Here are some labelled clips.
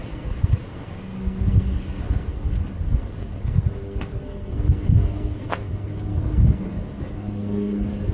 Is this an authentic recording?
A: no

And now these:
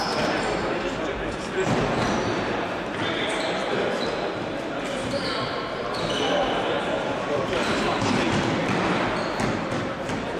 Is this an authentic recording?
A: no